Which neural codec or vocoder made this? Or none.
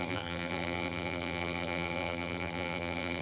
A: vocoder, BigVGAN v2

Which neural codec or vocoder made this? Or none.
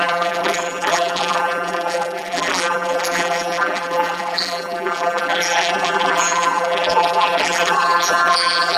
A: vocoder, BigVGAN v2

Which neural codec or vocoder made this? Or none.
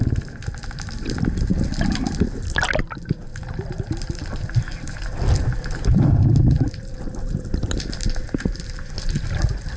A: none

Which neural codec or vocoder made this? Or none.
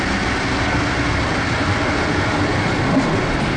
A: none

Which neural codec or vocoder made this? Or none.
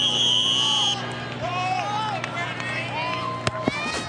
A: none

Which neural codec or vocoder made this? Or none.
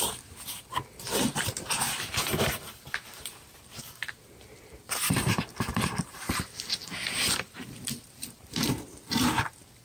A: vocoder, BigVGAN v2